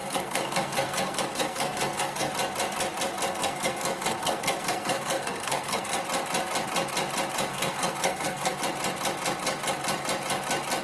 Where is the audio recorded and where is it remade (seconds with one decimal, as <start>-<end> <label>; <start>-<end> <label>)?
0.0-2.3 remade; 2.3-3.3 recorded; 3.3-6.0 remade; 6.0-7.5 recorded; 7.5-8.6 remade; 8.6-10.8 recorded